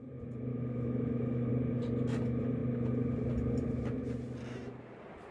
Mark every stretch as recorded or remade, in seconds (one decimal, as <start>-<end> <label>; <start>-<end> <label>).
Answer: 0.0-0.5 recorded; 0.5-1.5 remade; 1.5-5.3 recorded